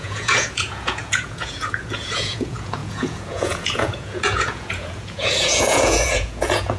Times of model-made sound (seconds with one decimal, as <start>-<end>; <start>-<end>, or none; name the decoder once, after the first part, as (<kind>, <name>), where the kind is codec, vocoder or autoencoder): 0.0-6.8 (vocoder, Vocos)